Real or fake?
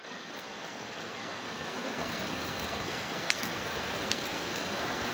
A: fake